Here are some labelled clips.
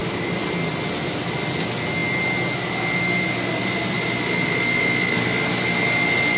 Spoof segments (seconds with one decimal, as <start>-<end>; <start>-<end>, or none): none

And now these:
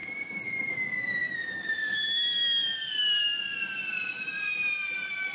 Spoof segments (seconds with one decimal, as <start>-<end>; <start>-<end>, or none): none

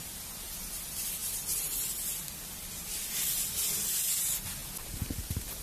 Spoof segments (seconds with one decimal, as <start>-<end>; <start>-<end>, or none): none

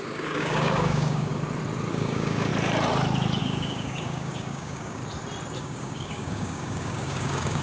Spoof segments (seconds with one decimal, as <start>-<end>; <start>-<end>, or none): 0.0-1.3; 1.9-2.5; 3.4-5.0; 5.6-7.6